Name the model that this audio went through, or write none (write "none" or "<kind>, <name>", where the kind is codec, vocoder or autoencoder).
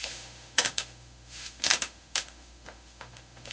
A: autoencoder, DAC-VAE